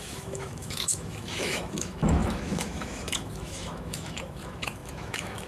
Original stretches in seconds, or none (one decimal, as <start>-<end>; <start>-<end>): none